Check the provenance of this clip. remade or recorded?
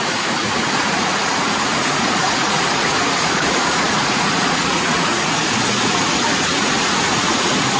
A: remade